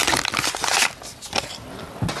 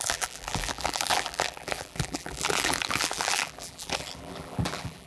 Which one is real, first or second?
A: first